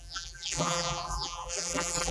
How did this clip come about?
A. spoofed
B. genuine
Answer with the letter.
A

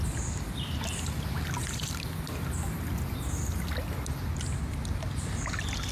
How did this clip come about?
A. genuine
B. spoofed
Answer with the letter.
A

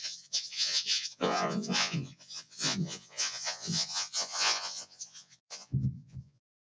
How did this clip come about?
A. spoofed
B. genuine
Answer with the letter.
A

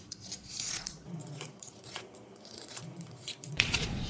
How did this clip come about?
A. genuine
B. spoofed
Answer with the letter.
B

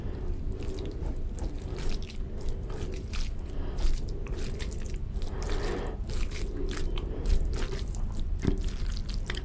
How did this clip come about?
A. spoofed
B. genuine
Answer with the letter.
B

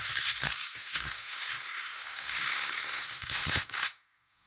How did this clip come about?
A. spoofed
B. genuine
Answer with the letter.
A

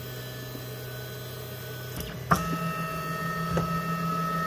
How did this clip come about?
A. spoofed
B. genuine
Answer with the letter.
B